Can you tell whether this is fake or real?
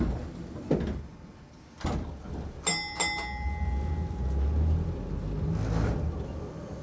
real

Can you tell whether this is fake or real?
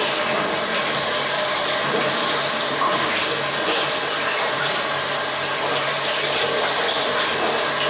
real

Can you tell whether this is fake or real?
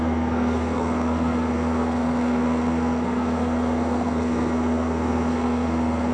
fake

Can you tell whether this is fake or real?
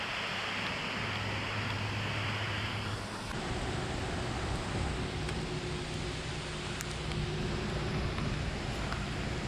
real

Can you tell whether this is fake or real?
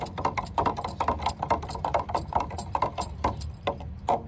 real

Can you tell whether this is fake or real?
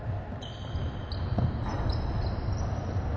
real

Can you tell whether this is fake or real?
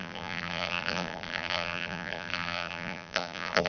fake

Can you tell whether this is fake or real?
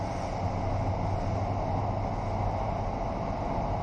real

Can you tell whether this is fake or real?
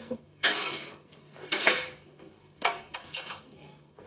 fake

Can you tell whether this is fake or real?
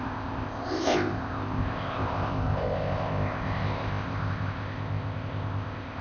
fake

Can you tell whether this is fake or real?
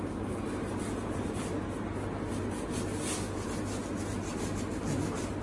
real